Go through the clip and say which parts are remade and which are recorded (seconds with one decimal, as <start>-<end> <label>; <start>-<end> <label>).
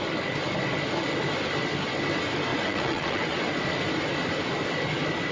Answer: 0.0-2.5 recorded; 2.5-3.4 remade; 3.4-5.3 recorded